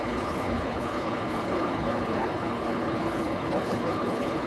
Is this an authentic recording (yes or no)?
no